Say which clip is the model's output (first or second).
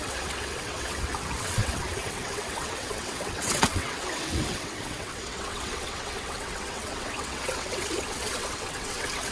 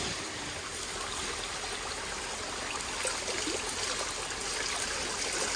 first